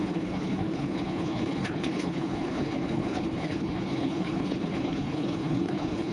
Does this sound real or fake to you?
fake